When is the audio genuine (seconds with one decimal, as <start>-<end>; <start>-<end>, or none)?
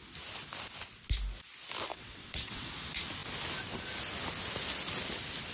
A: 0.0-1.9; 2.7-5.5